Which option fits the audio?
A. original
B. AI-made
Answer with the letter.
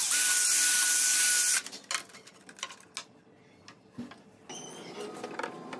A